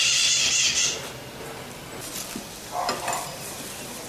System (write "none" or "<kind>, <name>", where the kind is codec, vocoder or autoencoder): none